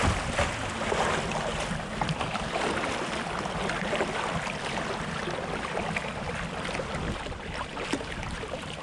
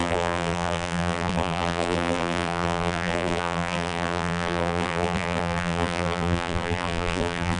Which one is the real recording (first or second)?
first